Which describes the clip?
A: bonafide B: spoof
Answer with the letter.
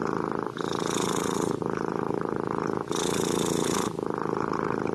A